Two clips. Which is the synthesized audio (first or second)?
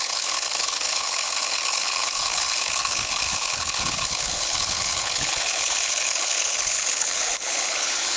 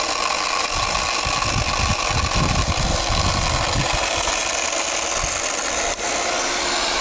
first